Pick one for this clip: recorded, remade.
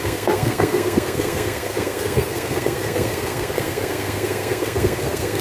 remade